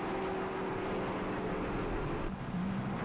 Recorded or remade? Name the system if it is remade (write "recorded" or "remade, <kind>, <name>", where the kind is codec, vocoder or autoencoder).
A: recorded